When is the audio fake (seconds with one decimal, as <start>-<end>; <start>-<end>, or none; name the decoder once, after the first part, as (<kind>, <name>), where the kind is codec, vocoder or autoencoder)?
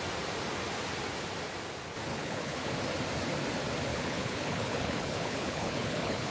2.1-2.7 (codec, HILCodec); 3.9-6.3